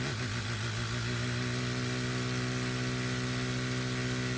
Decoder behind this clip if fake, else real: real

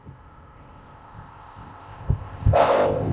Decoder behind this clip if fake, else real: fake, codec, ZipCodec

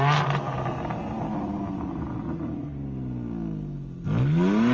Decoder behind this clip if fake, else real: real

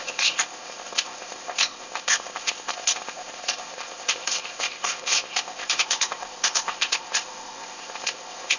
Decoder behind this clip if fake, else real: fake, codec, ZipCodec